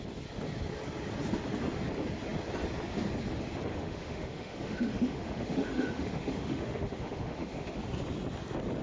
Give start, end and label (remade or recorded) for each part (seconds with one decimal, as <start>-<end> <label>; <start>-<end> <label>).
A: 0.0-3.7 recorded; 3.7-7.8 remade; 7.8-8.8 recorded